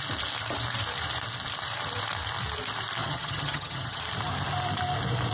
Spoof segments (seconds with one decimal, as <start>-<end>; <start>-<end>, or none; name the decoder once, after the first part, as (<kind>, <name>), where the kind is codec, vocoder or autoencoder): 3.0-4.0 (vocoder, HiFi-GAN)